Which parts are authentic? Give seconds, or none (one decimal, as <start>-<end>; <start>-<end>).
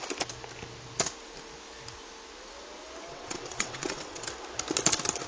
0.0-3.1; 4.3-5.3